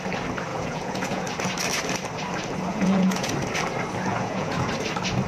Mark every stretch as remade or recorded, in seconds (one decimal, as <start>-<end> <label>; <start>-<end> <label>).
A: 0.0-0.5 recorded; 0.5-1.2 remade; 1.2-2.7 recorded; 2.7-3.3 remade; 3.3-4.1 recorded; 4.1-4.7 remade; 4.7-5.3 recorded